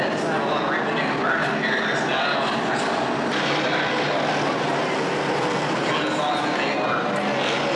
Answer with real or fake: real